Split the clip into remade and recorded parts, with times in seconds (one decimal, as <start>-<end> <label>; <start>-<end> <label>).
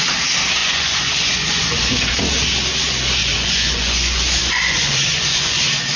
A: 0.0-0.6 recorded; 0.6-2.1 remade; 2.1-3.2 recorded; 3.2-5.6 remade; 5.6-6.0 recorded